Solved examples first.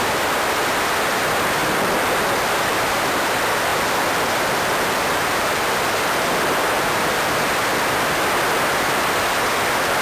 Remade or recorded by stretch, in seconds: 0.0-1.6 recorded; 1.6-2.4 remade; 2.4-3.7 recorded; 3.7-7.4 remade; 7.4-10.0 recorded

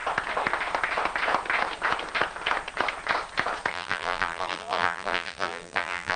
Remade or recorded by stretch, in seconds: 0.0-3.7 recorded; 3.7-6.2 remade

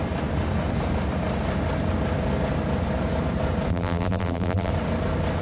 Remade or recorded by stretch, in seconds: 0.0-3.7 recorded; 3.7-4.7 remade; 4.7-5.4 recorded